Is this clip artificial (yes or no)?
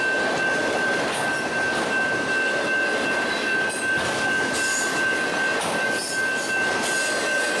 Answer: no